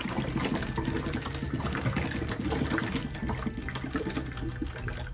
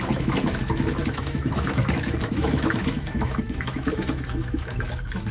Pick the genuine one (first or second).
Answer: first